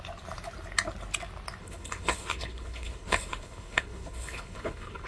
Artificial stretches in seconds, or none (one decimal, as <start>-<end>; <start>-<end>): 1.6-5.1

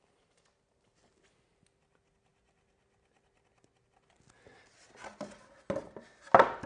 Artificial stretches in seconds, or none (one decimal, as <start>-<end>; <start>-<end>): none

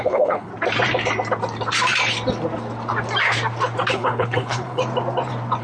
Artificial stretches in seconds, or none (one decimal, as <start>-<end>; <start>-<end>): 0.0-0.5; 3.9-4.8